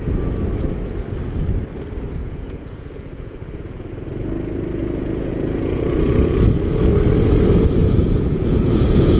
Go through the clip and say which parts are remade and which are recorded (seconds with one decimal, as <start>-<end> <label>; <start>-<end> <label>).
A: 0.0-2.2 recorded; 2.2-3.9 remade; 3.9-4.8 recorded; 4.8-6.5 remade; 6.5-7.8 recorded; 7.8-9.2 remade